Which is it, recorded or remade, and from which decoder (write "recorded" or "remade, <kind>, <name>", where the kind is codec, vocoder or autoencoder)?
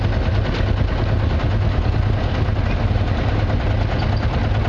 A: recorded